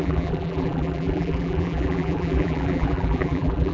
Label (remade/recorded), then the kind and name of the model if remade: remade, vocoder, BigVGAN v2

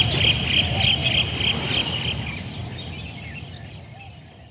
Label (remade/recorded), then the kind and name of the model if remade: recorded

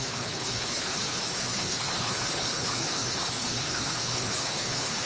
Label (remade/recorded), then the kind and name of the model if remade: remade, codec, HILCodec